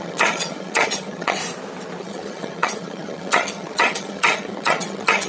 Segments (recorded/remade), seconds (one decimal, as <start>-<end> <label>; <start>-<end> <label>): 0.0-1.4 remade; 1.4-2.0 recorded; 2.0-5.3 remade